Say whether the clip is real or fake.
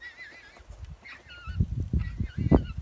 real